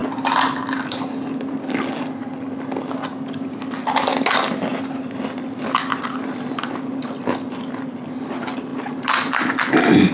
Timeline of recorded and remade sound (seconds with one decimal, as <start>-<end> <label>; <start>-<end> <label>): 0.0-10.1 recorded